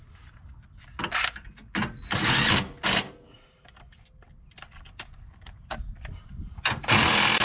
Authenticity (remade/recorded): recorded